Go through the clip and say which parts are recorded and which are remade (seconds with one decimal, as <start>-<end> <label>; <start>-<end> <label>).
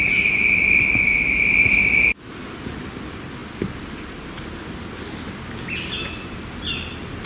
0.0-7.3 recorded